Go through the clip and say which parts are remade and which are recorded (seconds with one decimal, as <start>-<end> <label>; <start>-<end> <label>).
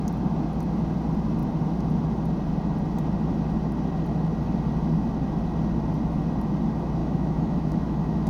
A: 0.0-7.0 recorded; 7.0-8.3 remade